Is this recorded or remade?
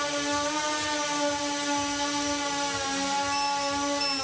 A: recorded